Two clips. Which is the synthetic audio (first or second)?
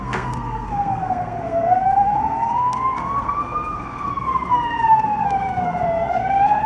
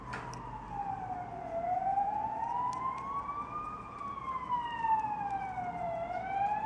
first